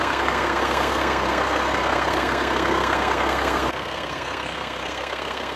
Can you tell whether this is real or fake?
fake